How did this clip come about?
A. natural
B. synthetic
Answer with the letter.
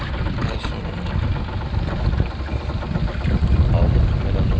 A